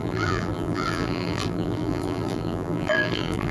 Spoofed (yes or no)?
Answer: yes